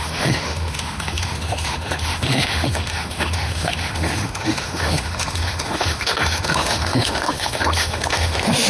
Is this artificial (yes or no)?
yes